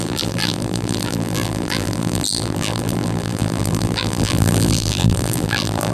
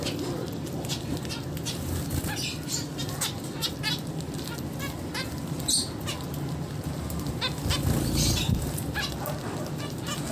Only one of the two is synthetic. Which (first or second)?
first